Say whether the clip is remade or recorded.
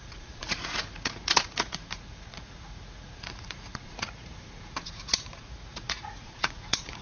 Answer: remade